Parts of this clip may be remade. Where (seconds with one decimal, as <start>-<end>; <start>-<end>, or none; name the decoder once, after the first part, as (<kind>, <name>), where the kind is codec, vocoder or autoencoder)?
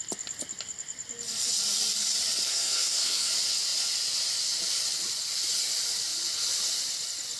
2.5-3.3 (codec, SNAC)